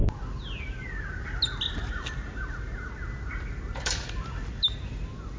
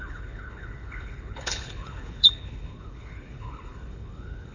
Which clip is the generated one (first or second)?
second